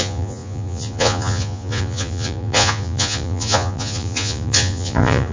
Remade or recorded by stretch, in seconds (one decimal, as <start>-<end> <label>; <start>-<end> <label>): 0.0-5.3 remade